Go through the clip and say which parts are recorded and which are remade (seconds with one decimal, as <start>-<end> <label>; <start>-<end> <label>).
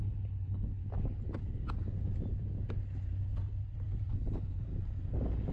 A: 0.0-0.8 remade; 0.8-4.1 recorded; 4.1-4.7 remade; 4.7-5.5 recorded